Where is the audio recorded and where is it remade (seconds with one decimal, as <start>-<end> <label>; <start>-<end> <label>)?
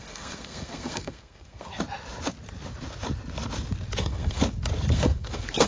0.0-1.7 remade; 1.7-4.0 recorded; 4.0-4.4 remade; 4.4-4.9 recorded; 4.9-5.7 remade